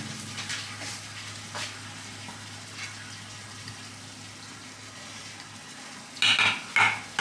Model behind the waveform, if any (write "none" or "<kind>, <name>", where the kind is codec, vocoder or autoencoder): none